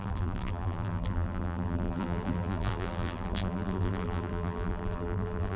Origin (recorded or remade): remade